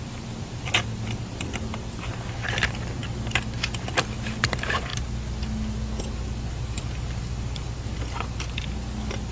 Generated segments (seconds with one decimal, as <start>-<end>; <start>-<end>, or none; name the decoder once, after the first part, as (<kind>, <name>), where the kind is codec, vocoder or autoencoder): 0.0-4.9 (vocoder, BigVGAN v2); 6.0-9.3

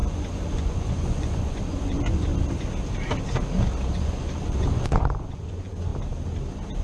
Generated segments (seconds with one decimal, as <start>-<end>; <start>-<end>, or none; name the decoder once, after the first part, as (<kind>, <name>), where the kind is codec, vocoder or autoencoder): 0.0-2.3 (vocoder, Vocos); 3.9-5.9

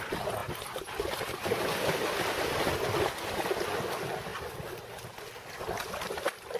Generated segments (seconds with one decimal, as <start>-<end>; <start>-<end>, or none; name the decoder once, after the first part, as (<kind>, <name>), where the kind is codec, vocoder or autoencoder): none